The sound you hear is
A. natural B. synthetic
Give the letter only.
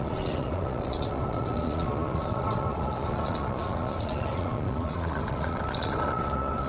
B